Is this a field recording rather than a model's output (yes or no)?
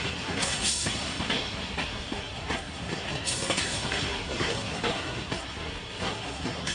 no